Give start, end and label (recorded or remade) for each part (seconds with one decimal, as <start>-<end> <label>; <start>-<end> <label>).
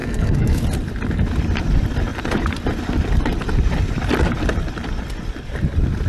0.0-0.6 remade; 0.6-6.1 recorded